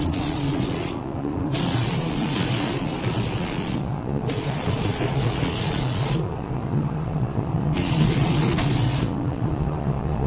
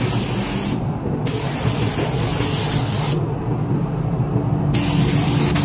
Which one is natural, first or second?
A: second